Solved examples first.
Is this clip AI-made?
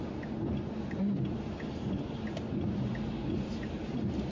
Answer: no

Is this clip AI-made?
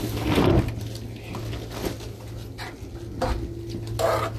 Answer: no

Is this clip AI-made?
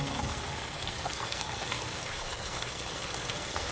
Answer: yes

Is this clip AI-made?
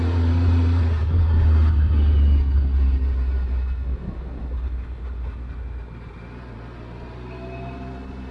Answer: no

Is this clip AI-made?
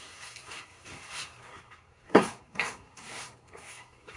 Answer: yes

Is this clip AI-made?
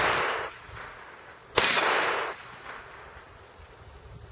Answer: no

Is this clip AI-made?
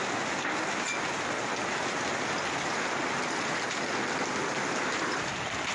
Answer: no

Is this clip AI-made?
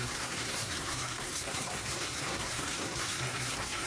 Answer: yes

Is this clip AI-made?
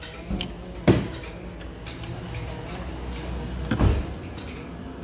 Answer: no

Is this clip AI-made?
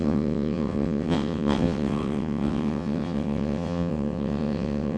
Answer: yes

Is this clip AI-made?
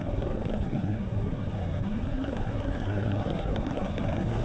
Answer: yes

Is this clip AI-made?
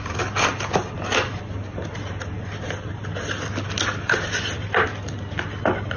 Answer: no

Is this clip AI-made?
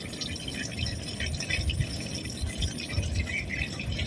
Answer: no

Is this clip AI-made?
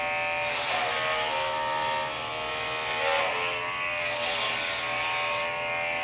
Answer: no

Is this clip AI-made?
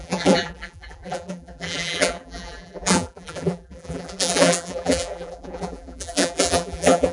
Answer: yes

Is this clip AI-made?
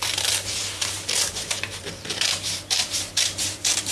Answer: yes